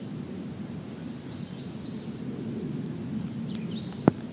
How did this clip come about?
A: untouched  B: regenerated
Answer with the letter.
A